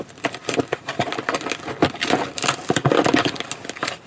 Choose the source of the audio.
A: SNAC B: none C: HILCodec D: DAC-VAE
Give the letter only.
B